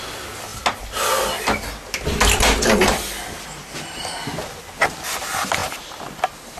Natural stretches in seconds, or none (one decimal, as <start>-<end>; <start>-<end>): 0.0-6.6